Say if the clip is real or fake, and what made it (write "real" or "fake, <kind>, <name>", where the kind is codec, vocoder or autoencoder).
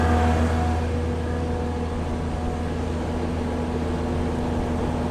real